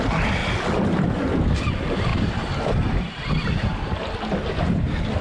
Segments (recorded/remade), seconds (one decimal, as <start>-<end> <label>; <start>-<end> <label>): 0.0-5.2 recorded